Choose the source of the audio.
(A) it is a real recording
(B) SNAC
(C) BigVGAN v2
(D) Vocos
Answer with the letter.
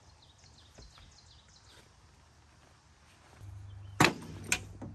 A